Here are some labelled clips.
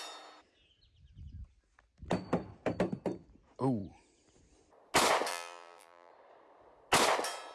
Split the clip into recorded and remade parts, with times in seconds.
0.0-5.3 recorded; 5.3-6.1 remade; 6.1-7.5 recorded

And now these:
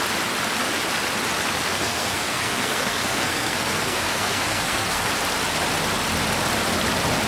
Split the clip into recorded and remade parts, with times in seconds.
0.0-1.7 recorded; 1.7-5.1 remade; 5.1-7.3 recorded

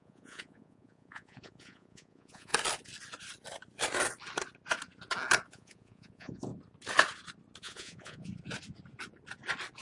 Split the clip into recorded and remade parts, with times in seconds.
0.0-2.5 remade; 2.5-5.5 recorded; 5.5-6.5 remade; 6.5-7.6 recorded; 7.6-8.3 remade; 8.3-9.8 recorded

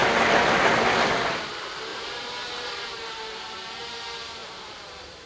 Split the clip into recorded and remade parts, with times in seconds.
0.0-1.9 recorded; 1.9-3.8 remade; 3.8-4.4 recorded; 4.4-5.3 remade